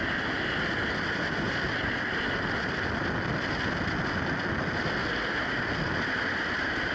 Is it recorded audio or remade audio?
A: recorded